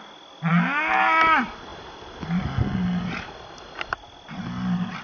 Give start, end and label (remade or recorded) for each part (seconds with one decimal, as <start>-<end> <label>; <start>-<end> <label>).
0.0-5.0 recorded